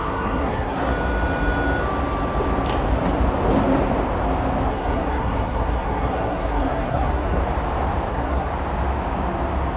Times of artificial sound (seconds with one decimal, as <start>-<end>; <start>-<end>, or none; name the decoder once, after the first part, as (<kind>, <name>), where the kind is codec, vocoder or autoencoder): 0.0-0.9 (codec, SNAC); 4.7-7.4; 8.1-8.5